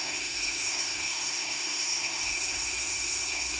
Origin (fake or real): fake